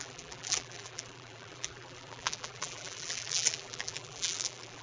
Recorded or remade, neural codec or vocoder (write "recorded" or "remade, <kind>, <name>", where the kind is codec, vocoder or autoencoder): remade, vocoder, BigVGAN v2